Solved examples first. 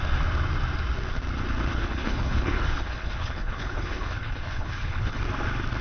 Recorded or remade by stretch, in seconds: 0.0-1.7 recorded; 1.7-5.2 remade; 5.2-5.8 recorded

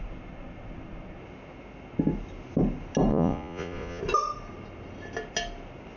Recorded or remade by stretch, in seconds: 0.0-3.1 recorded; 3.1-4.0 remade; 4.0-6.0 recorded

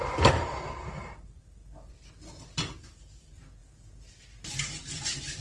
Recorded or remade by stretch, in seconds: 0.0-1.6 remade; 1.6-2.8 recorded; 2.8-3.6 remade; 3.6-4.6 recorded; 4.6-5.4 remade

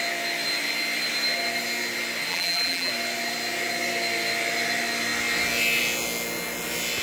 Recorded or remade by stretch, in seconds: 0.0-2.3 recorded; 2.3-2.9 remade; 2.9-7.0 recorded